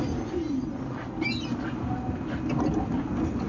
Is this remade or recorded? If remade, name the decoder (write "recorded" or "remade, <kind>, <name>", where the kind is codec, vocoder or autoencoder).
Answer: recorded